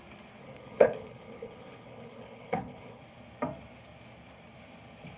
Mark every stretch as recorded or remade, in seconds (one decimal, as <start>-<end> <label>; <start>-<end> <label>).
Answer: 0.0-0.4 recorded; 0.4-3.0 remade; 3.0-5.2 recorded